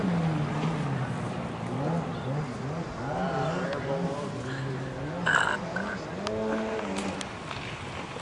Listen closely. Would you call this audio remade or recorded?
recorded